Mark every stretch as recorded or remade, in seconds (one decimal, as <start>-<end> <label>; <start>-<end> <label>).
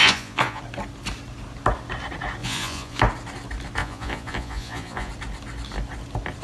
0.0-0.6 remade; 0.6-2.4 recorded; 2.4-3.0 remade; 3.0-3.8 recorded; 3.8-5.1 remade; 5.1-6.4 recorded